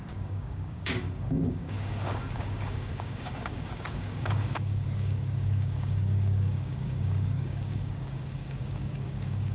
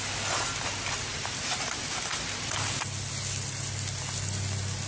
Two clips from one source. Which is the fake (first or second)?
first